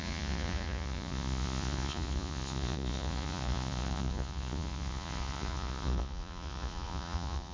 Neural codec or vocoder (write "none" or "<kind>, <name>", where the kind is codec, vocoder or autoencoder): vocoder, Vocos